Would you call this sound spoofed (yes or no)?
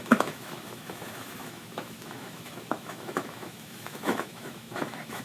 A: yes